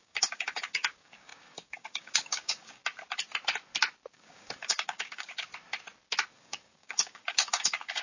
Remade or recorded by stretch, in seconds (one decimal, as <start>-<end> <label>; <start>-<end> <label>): 0.0-2.8 remade; 2.8-4.1 recorded; 4.1-5.5 remade; 5.5-6.3 recorded; 6.3-8.0 remade